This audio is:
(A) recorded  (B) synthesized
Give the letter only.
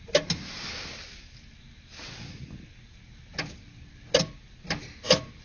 A